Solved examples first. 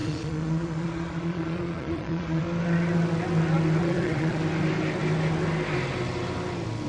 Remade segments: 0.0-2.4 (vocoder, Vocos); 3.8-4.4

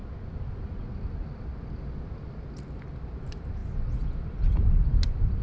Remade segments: none

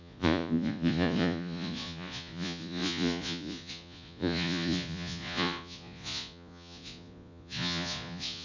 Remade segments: 0.0-8.4 (vocoder, Vocos)

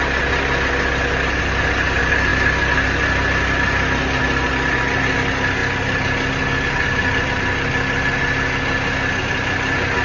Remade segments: none

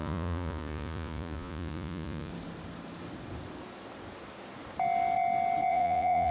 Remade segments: 0.0-2.3 (vocoder, Vocos); 5.7-6.3

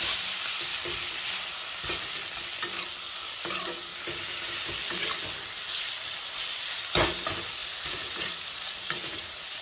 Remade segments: 7.6-9.6 (vocoder, Vocos)